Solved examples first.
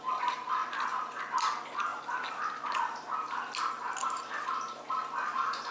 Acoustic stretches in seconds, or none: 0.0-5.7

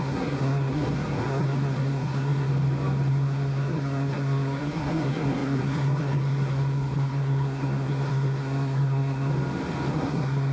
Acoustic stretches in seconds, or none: 2.5-3.1; 9.3-9.9

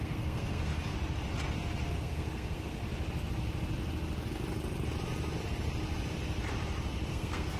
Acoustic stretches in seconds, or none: 0.7-1.9; 2.8-7.1

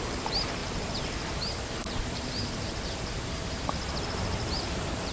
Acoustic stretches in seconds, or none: 0.0-5.1

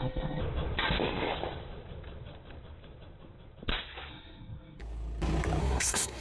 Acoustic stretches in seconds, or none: 0.4-4.1; 4.8-5.6

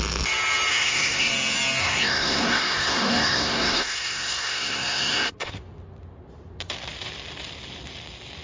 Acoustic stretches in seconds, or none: 0.0-0.7; 1.3-1.8; 5.5-8.4

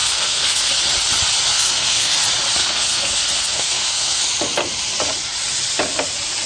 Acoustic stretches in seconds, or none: 0.7-1.5; 2.2-2.6; 4.2-6.5

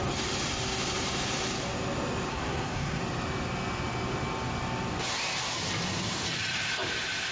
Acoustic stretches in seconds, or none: 0.0-2.3; 3.0-7.3